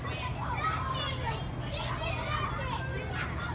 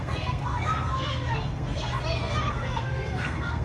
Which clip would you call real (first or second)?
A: first